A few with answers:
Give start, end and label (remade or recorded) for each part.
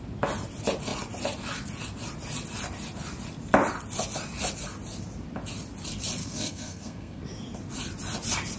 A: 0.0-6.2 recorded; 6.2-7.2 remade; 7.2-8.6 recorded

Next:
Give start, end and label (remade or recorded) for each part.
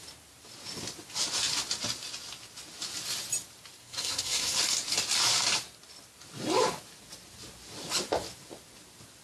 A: 0.0-3.8 recorded; 3.8-4.6 remade; 4.6-9.2 recorded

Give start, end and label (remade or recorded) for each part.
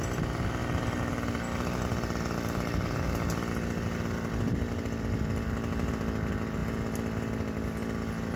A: 0.0-8.4 recorded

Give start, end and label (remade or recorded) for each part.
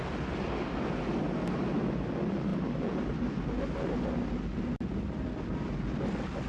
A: 0.0-6.5 recorded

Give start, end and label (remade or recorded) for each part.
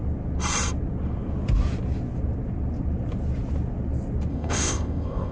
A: 0.0-4.3 recorded; 4.3-5.3 remade